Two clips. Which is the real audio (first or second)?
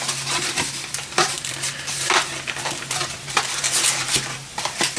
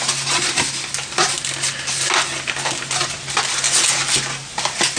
second